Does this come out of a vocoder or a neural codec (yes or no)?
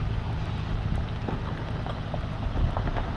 no